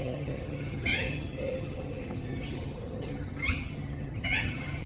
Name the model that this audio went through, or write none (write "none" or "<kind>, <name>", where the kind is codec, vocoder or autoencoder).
vocoder, HiFi-GAN